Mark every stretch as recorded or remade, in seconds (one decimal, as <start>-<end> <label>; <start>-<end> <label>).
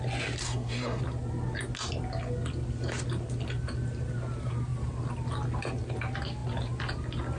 0.0-0.4 recorded; 0.4-1.0 remade; 1.0-7.4 recorded